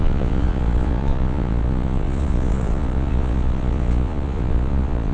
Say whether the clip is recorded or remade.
remade